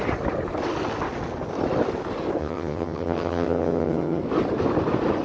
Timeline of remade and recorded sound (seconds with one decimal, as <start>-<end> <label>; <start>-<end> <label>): 0.0-2.4 recorded; 2.4-4.2 remade; 4.2-5.2 recorded